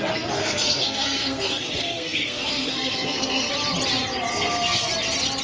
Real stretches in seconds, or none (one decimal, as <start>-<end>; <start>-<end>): 0.0-0.4; 3.5-4.3; 4.9-5.4